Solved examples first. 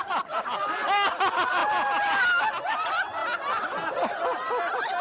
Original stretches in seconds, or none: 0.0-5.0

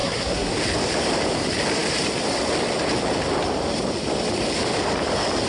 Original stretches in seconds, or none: 0.5-5.5

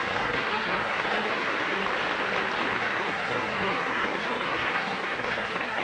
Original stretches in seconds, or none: 1.8-2.8

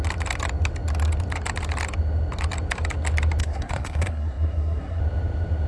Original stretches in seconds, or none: 0.0-3.4; 5.0-5.7

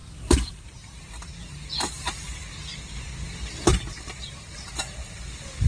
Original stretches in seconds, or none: 0.0-5.7

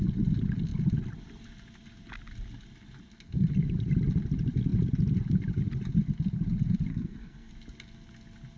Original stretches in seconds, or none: 0.0-6.9; 7.5-8.6

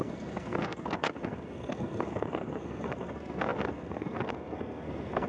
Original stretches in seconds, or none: none

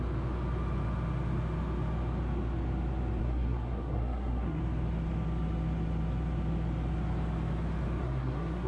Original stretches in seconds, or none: 0.0-3.2; 4.6-8.0